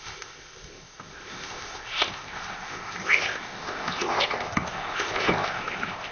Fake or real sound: fake